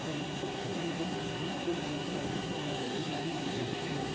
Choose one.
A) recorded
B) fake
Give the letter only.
B